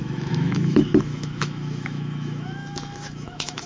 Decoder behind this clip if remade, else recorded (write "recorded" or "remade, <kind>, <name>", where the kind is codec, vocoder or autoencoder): remade, autoencoder, DAC-VAE